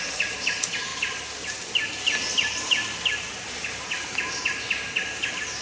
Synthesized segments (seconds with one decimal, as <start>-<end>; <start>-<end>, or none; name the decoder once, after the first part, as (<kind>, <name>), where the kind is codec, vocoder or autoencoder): none